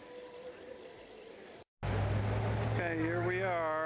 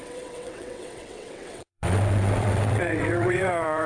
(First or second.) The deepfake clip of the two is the second